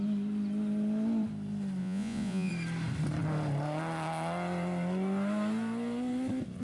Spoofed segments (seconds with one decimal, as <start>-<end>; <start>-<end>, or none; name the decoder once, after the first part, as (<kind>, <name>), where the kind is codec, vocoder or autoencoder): 1.8-2.5 (vocoder, Vocos)

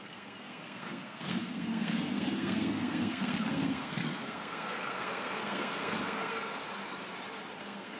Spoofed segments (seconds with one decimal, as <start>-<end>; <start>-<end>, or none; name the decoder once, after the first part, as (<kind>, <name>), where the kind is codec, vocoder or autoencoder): 0.0-6.6 (codec, SNAC); 7.6-8.0